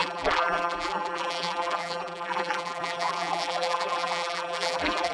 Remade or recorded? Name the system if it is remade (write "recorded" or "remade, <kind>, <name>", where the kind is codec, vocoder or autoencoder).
remade, vocoder, BigVGAN v2